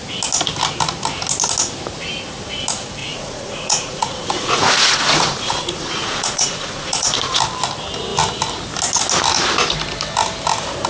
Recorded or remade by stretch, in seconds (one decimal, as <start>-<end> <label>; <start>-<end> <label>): 0.0-3.0 recorded; 3.0-7.4 remade; 7.4-10.9 recorded